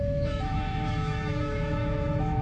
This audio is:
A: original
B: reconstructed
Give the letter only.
B